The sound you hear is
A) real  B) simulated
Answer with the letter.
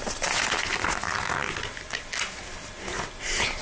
A